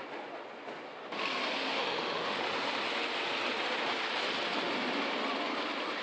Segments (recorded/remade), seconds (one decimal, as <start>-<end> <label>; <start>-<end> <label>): 0.0-1.7 recorded; 1.7-2.4 remade; 2.4-6.0 recorded